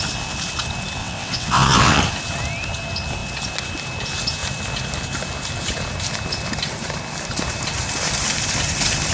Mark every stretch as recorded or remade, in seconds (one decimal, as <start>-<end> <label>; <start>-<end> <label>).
0.0-1.0 recorded; 1.0-2.0 remade; 2.0-9.1 recorded